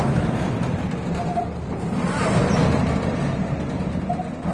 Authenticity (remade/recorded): remade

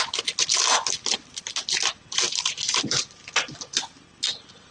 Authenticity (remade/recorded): recorded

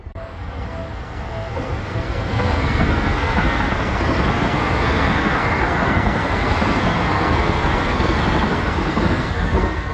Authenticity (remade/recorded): remade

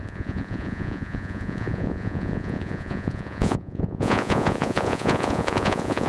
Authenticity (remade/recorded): remade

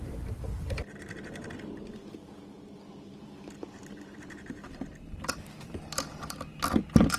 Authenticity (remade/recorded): remade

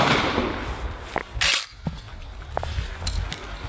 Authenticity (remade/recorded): recorded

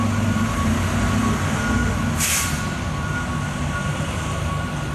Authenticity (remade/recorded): recorded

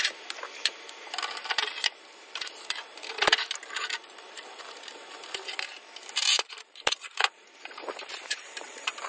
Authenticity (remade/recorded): remade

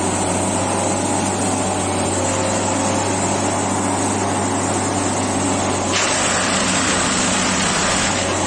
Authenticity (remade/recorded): recorded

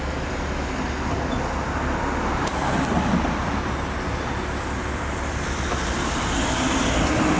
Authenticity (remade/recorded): recorded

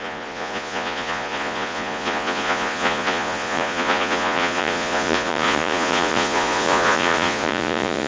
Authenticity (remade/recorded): remade